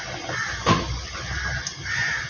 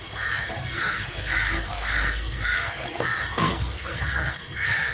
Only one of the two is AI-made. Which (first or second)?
second